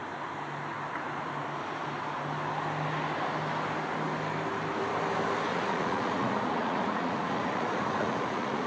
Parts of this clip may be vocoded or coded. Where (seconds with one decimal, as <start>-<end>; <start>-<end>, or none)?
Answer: 5.5-8.7